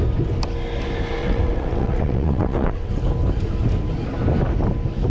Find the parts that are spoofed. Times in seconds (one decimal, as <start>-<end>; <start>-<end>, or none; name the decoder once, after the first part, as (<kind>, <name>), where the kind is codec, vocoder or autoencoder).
1.2-2.9 (vocoder, WaveNeXt)